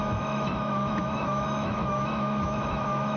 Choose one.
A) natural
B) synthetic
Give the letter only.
B